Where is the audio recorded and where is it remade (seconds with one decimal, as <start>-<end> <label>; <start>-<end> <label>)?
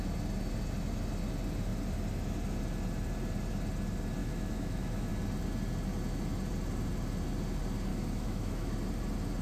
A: 0.0-4.2 recorded; 4.2-5.1 remade; 5.1-7.9 recorded; 7.9-8.7 remade; 8.7-9.4 recorded